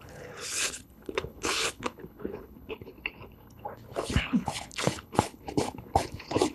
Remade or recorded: remade